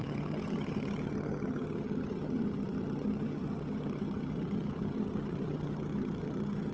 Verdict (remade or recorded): remade